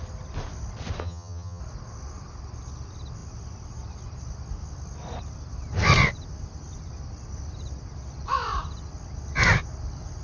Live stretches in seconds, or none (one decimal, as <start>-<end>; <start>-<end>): 0.0-1.0; 1.6-10.2